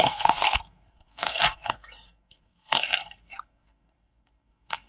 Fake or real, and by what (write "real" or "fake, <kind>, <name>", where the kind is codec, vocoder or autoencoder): fake, codec, SNAC